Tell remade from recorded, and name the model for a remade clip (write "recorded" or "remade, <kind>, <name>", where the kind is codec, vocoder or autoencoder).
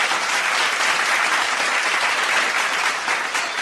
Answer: recorded